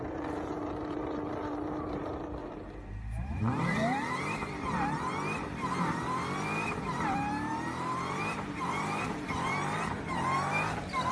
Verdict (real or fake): fake